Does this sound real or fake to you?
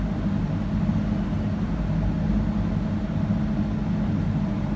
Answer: real